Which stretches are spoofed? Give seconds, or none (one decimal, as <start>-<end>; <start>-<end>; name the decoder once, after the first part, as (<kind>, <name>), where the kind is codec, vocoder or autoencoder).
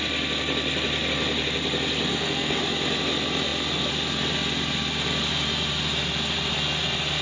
2.1-2.6 (codec, SNAC)